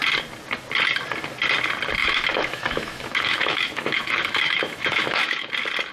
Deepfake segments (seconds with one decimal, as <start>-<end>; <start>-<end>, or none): 2.0-5.5

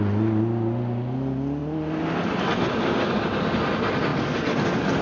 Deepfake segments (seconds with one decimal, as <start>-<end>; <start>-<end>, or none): none

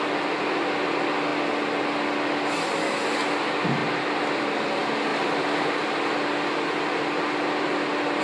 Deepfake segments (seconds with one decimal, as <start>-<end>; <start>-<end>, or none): none